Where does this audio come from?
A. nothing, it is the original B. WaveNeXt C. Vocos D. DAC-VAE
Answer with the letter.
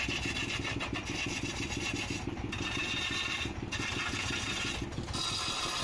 A